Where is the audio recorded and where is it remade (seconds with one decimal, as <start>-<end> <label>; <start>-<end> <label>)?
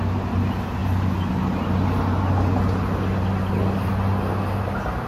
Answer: 0.0-5.1 recorded